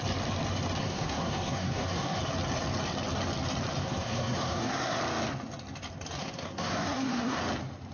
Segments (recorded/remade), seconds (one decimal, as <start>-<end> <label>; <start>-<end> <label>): 0.0-0.8 recorded; 0.8-2.2 remade; 2.2-3.8 recorded; 3.8-5.0 remade; 5.0-6.2 recorded; 6.2-7.4 remade; 7.4-7.9 recorded